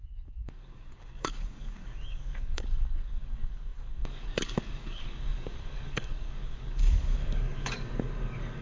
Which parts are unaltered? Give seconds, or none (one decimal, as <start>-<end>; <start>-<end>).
none